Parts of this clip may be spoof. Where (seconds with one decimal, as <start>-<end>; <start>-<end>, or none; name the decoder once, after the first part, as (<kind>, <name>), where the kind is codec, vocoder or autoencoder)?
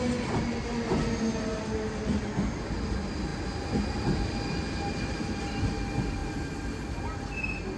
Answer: none